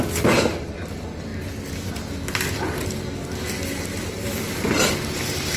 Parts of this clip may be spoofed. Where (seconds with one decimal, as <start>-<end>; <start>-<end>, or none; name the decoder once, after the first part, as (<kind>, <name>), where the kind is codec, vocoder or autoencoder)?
none